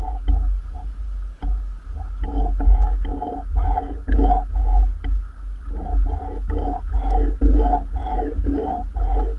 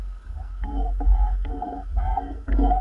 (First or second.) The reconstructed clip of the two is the second